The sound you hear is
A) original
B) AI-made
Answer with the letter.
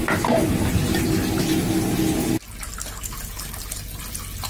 A